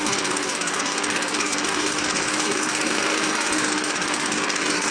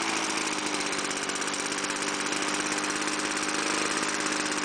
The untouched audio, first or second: second